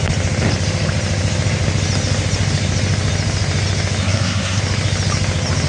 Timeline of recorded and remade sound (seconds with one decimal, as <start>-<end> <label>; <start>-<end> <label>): 0.0-4.0 recorded; 4.0-4.6 remade; 4.6-5.7 recorded